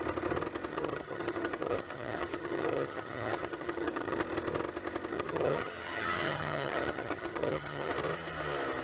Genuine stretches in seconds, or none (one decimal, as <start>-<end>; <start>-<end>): 0.0-0.7; 4.2-5.1; 7.9-8.8